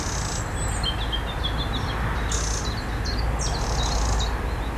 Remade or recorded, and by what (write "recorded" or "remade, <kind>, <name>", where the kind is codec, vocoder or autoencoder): recorded